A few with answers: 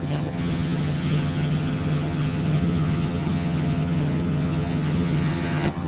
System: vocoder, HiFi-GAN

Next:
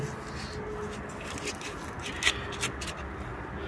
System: none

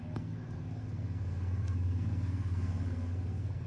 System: codec, SNAC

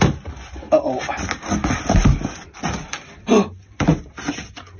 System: none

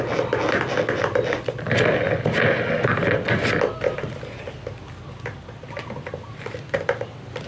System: none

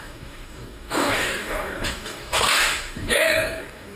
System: codec, DAC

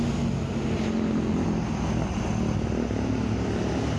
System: none